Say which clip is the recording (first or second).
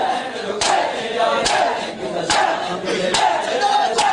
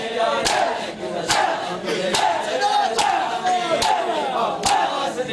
second